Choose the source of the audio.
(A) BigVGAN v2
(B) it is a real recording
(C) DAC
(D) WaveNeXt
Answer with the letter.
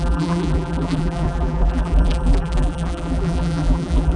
A